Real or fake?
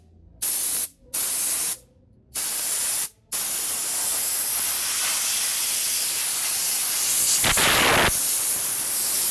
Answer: real